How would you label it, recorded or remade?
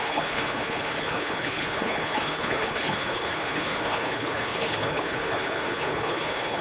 remade